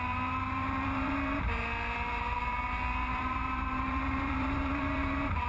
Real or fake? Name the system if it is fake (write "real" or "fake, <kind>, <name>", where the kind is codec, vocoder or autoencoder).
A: fake, vocoder, BigVGAN v2